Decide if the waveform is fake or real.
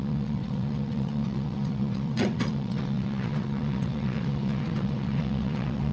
fake